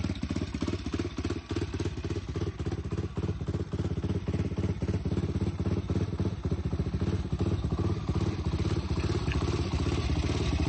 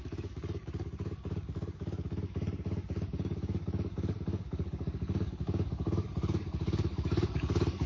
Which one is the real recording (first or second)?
first